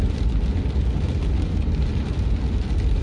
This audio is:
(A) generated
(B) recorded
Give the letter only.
B